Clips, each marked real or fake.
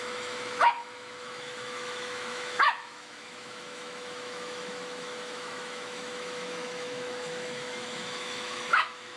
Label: fake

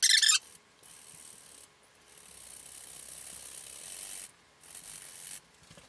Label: real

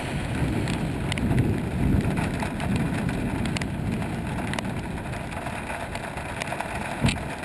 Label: real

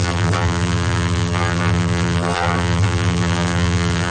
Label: fake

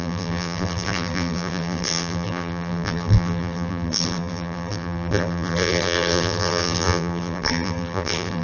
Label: fake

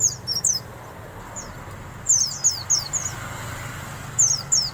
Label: real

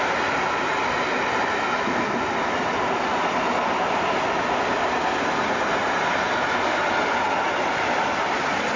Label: real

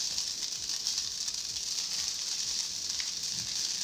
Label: real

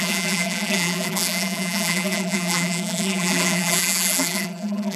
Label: fake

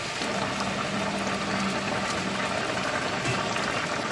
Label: real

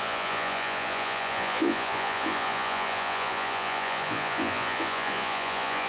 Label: fake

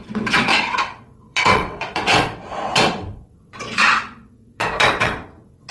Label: fake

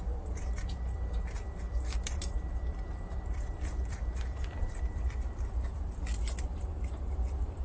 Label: fake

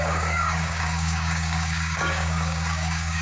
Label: fake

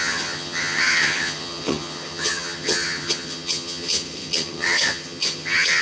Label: fake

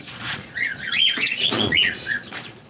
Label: fake